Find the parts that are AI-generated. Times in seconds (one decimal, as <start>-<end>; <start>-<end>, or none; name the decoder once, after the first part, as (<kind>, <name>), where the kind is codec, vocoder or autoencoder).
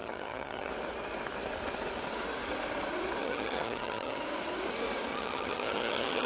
0.0-0.7 (vocoder, HiFi-GAN); 3.2-4.2; 5.1-6.3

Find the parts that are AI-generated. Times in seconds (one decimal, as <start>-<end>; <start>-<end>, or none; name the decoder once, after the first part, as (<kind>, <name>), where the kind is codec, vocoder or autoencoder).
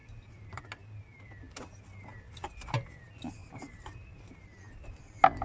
0.0-0.6 (vocoder, BigVGAN v2); 3.4-4.3